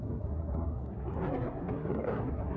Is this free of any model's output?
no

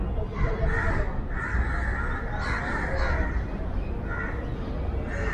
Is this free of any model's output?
yes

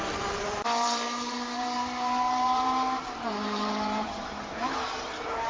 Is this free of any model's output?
no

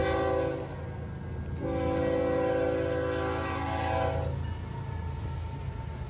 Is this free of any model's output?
yes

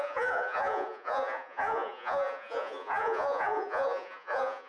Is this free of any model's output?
no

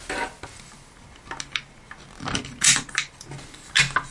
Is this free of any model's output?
yes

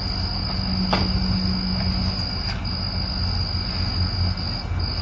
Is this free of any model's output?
yes